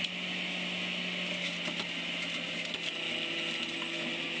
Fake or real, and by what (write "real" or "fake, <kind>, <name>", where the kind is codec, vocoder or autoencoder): real